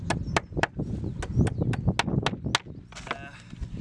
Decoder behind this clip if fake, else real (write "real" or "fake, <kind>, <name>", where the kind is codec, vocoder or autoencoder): real